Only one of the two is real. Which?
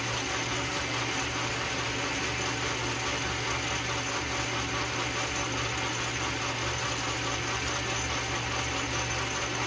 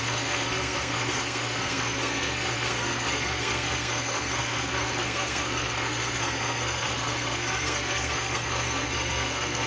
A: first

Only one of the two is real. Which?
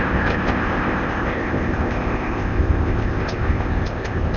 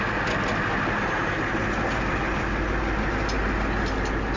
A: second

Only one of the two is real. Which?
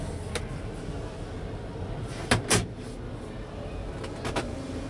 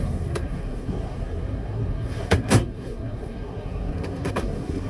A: first